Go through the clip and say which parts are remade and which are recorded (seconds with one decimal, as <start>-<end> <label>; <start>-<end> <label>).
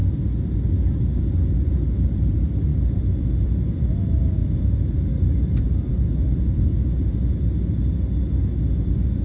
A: 0.0-9.2 recorded